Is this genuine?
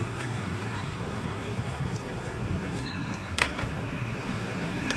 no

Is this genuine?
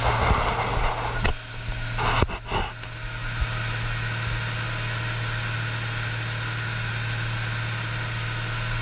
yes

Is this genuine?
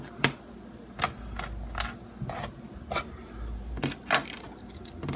yes